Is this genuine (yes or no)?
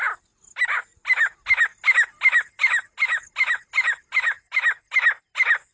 yes